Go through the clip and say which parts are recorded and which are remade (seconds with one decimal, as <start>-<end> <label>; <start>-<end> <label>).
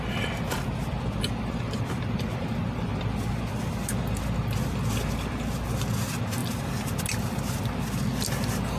0.0-8.8 recorded